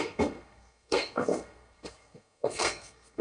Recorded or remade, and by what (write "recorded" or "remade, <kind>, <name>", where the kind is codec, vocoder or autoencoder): remade, codec, SNAC